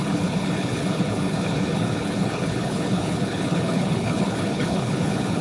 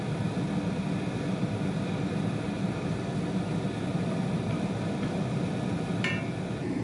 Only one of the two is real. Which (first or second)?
second